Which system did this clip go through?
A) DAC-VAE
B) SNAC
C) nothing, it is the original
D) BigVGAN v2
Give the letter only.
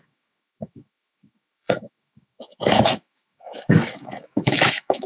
A